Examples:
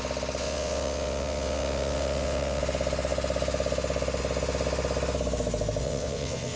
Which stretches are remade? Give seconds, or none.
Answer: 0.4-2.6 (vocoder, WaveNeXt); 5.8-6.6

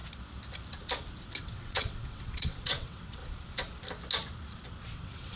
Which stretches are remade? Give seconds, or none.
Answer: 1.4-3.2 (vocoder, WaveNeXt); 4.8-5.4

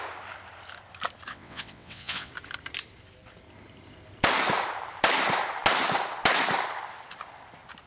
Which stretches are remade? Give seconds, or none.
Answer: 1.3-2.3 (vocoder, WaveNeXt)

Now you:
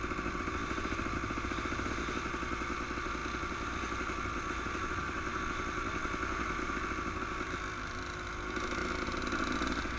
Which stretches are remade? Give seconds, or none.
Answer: none